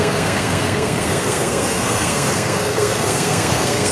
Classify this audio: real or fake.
fake